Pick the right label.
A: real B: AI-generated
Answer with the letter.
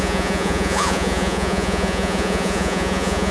B